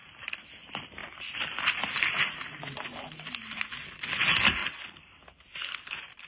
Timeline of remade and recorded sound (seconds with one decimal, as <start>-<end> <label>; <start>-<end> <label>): 0.0-6.3 recorded